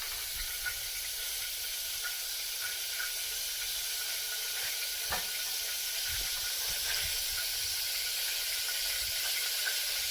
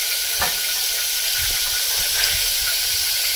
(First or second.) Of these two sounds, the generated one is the second